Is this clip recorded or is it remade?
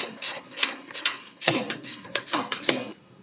remade